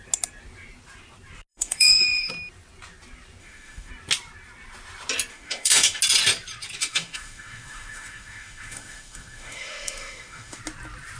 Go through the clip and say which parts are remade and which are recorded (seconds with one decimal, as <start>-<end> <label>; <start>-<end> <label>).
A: 0.0-1.5 recorded; 1.5-2.3 remade; 2.3-3.4 recorded; 3.4-3.9 remade; 3.9-5.3 recorded; 5.3-6.0 remade; 6.0-6.8 recorded; 6.8-10.6 remade; 10.6-11.2 recorded